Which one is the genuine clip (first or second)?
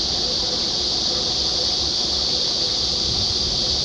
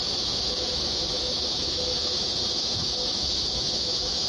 first